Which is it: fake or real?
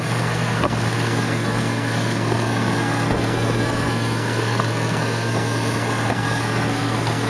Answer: fake